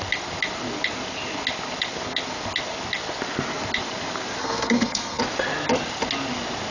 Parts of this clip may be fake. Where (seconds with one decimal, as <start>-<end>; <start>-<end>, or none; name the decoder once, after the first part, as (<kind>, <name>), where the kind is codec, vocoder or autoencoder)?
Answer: 4.4-5.2 (codec, SNAC)